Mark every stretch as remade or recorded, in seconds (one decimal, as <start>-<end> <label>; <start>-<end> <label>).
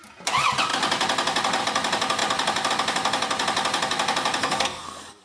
0.0-4.4 recorded; 4.4-5.2 remade